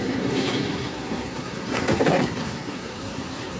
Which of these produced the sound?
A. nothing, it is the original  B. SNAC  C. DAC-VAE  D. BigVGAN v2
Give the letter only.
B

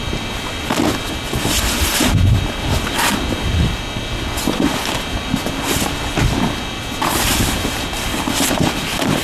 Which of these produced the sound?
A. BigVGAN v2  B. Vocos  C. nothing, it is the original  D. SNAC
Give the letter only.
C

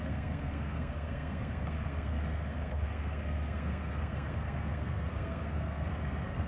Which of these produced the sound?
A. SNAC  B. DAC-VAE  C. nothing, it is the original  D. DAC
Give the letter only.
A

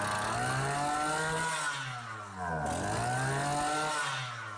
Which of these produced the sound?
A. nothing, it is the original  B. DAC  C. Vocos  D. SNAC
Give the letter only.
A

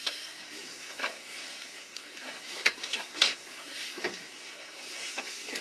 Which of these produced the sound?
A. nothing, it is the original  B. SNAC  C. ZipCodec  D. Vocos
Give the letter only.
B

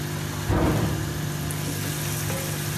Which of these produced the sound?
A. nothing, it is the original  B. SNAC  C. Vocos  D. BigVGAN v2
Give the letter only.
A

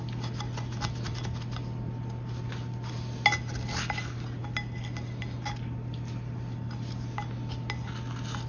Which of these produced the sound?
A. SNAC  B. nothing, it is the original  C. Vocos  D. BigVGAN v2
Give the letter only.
B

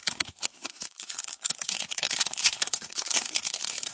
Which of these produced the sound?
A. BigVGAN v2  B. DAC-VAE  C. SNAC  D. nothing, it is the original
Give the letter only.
C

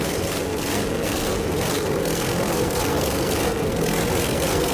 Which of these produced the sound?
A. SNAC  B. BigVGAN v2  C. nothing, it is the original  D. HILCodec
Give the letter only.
A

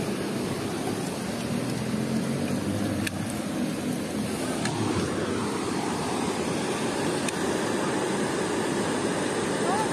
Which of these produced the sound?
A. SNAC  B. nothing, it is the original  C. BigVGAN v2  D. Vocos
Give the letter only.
B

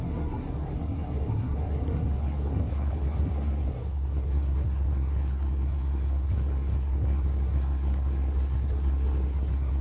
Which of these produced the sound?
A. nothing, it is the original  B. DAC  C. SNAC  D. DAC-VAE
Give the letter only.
C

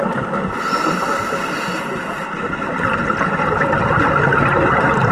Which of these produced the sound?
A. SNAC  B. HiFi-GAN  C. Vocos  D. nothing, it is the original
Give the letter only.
D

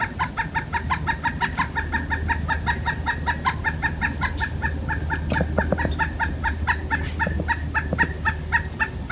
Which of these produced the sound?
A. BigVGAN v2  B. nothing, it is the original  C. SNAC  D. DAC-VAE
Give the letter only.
B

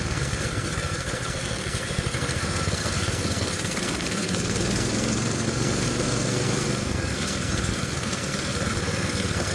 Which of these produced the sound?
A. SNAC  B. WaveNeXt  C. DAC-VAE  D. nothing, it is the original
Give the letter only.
A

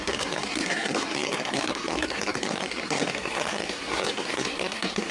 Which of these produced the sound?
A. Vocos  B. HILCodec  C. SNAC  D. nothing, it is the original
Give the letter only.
C